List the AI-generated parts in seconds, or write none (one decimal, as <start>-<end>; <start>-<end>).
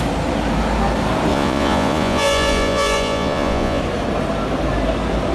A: 1.3-3.8